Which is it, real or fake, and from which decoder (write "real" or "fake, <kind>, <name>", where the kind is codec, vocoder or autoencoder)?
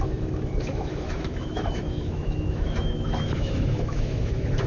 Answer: fake, autoencoder, DAC-VAE